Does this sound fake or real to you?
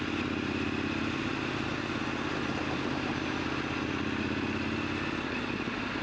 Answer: real